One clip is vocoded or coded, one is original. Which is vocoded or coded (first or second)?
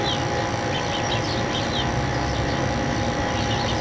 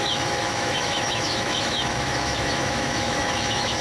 second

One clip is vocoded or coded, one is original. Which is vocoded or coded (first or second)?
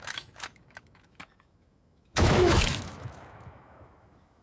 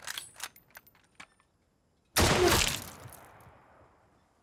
first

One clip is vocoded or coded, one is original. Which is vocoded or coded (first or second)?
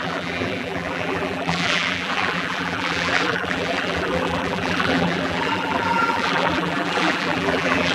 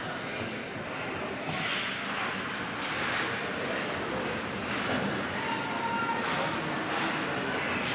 first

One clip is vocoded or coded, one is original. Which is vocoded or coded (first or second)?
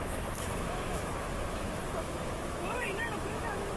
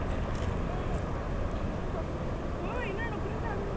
first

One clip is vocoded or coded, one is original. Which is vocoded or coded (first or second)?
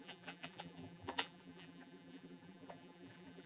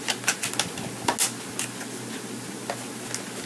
first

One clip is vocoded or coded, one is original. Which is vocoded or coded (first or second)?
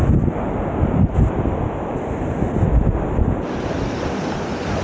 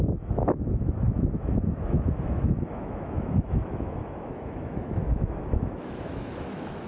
second